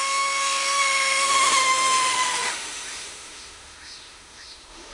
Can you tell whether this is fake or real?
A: fake